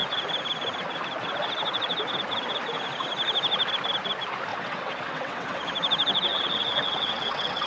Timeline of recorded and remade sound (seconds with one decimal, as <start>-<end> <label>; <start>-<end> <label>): 0.0-4.5 recorded; 4.5-5.6 remade; 5.6-6.3 recorded; 6.3-7.7 remade